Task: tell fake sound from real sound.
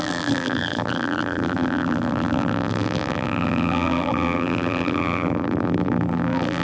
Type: fake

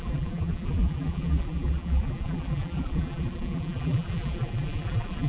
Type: fake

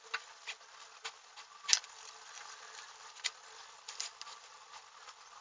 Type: real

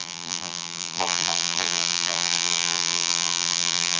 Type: fake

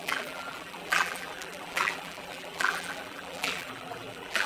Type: fake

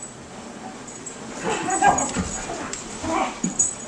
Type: fake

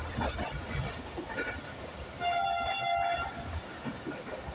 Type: real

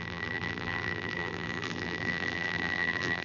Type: fake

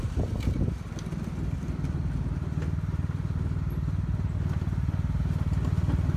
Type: real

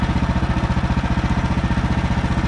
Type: real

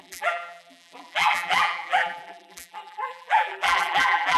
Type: fake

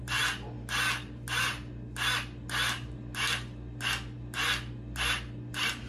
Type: real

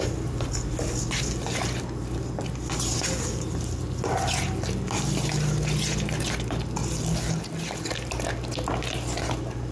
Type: real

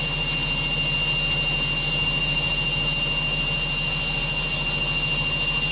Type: real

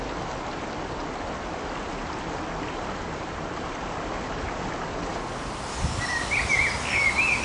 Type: real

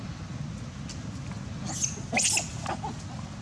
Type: real